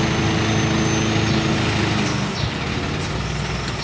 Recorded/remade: recorded